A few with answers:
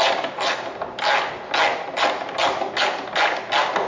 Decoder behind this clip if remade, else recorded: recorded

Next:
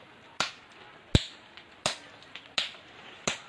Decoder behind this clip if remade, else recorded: recorded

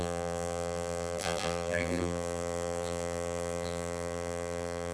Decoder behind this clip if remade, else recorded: remade, vocoder, BigVGAN v2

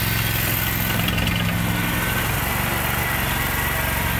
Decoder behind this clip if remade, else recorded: recorded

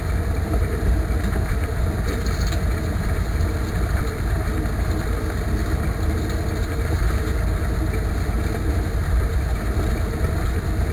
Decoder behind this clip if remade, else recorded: recorded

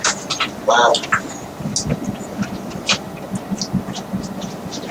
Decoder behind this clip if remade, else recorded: recorded